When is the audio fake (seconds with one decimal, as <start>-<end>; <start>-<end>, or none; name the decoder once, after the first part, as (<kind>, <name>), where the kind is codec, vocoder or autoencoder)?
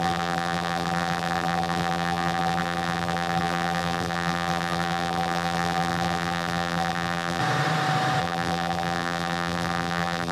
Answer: 0.0-7.4 (vocoder, BigVGAN v2); 8.2-10.3